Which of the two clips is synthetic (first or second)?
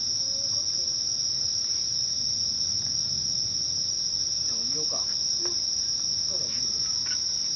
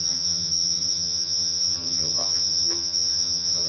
second